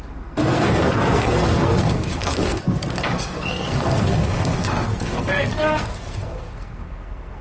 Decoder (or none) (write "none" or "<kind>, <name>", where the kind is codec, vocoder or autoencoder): codec, SNAC